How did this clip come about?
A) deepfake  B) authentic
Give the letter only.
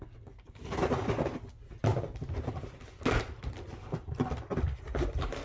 B